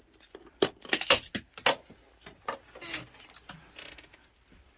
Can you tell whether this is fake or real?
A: real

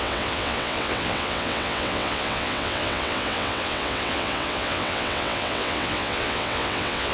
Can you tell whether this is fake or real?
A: fake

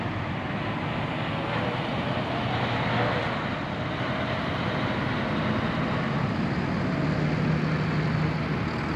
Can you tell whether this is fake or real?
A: real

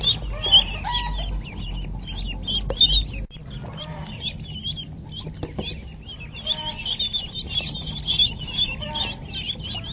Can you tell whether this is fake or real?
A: real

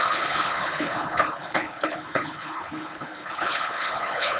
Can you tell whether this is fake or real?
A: fake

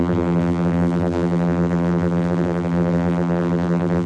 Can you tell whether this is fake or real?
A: fake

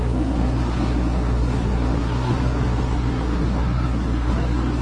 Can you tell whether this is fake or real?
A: fake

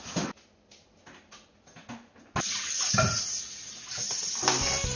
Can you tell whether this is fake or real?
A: real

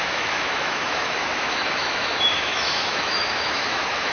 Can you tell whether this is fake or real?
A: fake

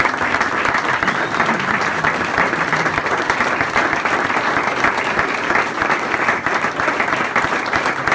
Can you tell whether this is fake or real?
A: real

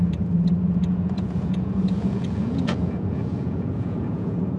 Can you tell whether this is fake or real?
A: fake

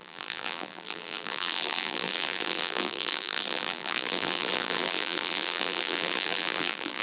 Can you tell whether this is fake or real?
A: fake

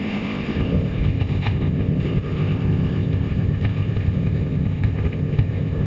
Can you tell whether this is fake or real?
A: fake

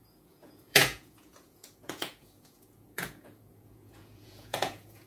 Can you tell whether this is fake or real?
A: fake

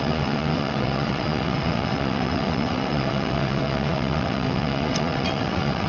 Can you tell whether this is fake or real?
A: fake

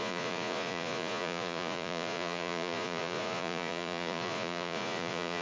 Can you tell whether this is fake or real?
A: fake